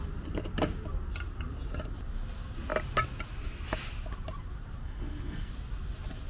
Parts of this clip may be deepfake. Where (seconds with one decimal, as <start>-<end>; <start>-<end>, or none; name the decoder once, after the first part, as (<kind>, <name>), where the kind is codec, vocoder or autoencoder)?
4.8-5.5 (codec, SNAC)